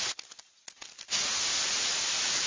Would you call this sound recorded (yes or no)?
yes